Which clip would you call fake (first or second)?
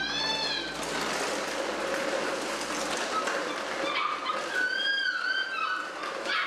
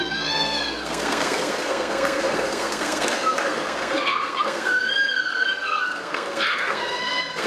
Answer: second